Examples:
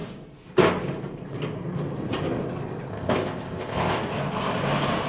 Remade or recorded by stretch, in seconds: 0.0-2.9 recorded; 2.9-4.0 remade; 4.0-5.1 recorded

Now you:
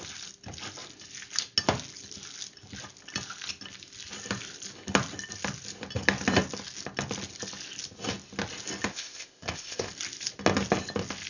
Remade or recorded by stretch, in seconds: 0.0-8.9 recorded; 8.9-9.9 remade; 9.9-11.3 recorded

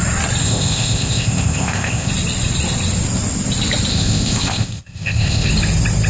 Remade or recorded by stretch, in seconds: 0.0-0.4 recorded; 0.4-2.1 remade; 2.1-3.9 recorded; 3.9-5.5 remade; 5.5-6.1 recorded

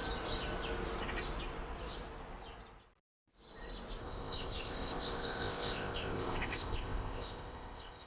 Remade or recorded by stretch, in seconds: 0.0-4.0 recorded; 4.0-8.1 remade

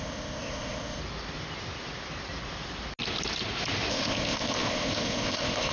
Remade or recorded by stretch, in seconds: 0.0-1.0 remade; 1.0-3.9 recorded; 3.9-5.7 remade

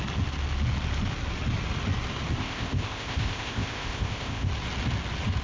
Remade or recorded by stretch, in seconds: 0.0-2.4 recorded; 2.4-4.5 remade; 4.5-5.4 recorded

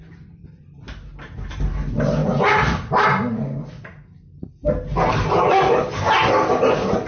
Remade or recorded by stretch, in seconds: 0.0-7.1 recorded

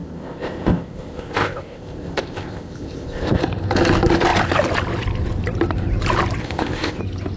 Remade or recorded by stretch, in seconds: 0.0-3.4 remade; 3.4-6.4 recorded; 6.4-7.0 remade; 7.0-7.4 recorded